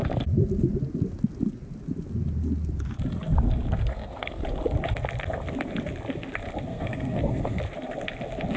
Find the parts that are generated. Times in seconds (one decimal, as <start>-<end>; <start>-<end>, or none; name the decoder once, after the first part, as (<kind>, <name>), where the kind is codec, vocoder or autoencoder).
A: 3.9-4.4 (codec, SNAC); 6.7-7.6